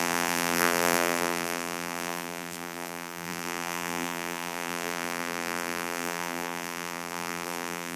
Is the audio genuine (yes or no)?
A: no